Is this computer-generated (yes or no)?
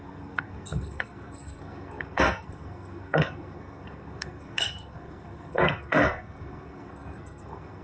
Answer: yes